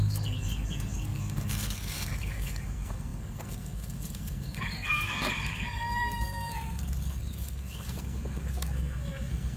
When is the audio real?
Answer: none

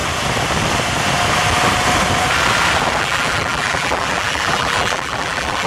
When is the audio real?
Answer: 0.0-3.0

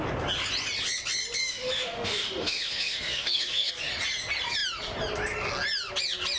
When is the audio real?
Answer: 0.0-1.4; 3.7-6.4

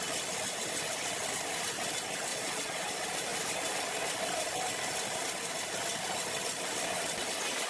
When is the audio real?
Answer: 0.0-2.3; 2.9-7.7

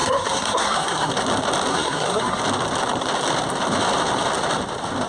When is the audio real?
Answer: 1.1-1.7; 2.4-5.1

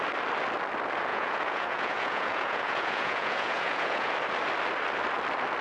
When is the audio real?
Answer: 0.0-1.1; 4.1-5.6

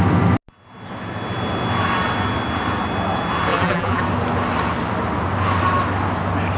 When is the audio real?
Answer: 0.0-3.5; 4.0-6.6

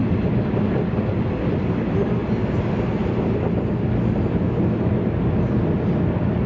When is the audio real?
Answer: 0.0-6.5